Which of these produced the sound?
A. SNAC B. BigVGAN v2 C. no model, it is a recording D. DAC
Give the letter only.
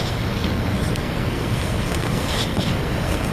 A